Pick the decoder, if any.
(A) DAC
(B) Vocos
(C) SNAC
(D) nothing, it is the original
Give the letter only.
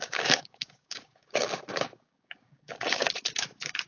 A